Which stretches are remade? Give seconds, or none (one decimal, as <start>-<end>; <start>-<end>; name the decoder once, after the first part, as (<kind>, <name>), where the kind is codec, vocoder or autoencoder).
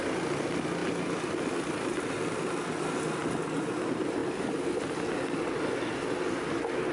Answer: none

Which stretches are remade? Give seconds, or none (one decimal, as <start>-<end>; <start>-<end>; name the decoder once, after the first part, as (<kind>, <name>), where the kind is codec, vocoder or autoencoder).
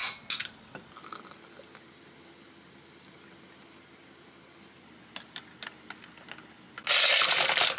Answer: none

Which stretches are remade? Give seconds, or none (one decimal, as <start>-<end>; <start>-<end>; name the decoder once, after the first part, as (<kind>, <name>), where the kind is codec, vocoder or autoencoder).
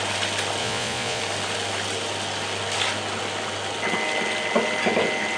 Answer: 0.6-1.2 (vocoder, Vocos)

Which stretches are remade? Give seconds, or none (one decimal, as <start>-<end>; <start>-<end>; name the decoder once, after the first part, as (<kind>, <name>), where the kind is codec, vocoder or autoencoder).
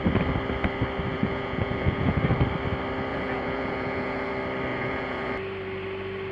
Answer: 1.1-2.2 (vocoder, Vocos); 3.1-4.3; 4.7-5.3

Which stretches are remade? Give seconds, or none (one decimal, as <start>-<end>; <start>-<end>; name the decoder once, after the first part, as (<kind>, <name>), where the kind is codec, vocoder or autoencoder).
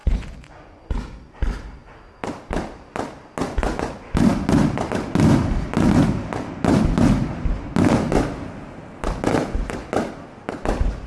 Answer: 0.0-0.9 (vocoder, Vocos); 3.4-3.9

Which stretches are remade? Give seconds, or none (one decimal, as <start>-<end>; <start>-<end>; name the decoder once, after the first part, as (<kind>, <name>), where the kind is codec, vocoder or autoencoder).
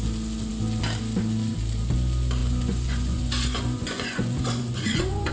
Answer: 2.4-5.3 (vocoder, Vocos)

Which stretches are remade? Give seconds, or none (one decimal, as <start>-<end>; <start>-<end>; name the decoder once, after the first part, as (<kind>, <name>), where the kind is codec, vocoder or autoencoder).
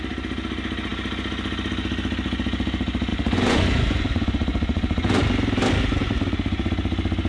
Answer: 3.1-5.2 (vocoder, Vocos); 6.0-6.7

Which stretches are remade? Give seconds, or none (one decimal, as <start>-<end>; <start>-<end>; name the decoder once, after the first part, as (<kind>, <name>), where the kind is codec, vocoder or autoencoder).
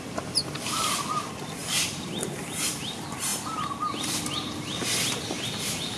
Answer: none